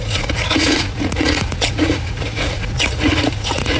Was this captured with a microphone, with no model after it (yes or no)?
no